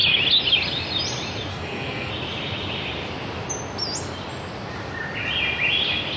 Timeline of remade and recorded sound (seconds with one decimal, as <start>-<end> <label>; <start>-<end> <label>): 0.0-1.5 recorded; 1.5-2.1 remade; 2.1-6.2 recorded